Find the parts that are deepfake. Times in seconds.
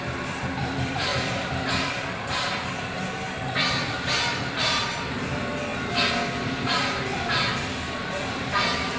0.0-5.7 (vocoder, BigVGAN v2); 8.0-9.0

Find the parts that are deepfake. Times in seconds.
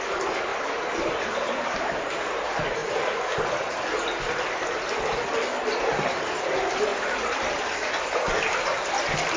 0.5-1.1 (vocoder, BigVGAN v2); 6.9-8.9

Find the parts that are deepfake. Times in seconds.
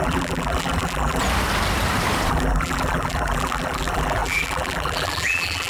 0.0-1.2 (vocoder, BigVGAN v2); 2.3-5.7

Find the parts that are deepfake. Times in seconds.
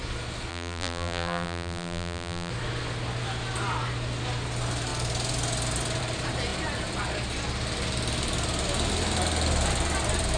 0.5-2.5 (vocoder, BigVGAN v2)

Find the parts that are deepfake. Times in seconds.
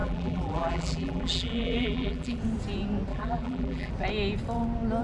0.0-2.4 (vocoder, BigVGAN v2); 3.1-3.9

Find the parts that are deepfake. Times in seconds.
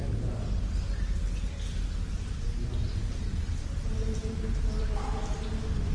3.6-5.4 (vocoder, BigVGAN v2)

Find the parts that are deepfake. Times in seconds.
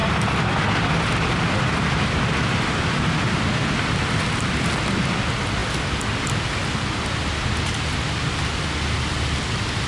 none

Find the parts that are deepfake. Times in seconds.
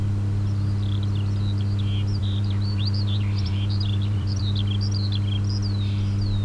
2.2-4.4 (vocoder, BigVGAN v2)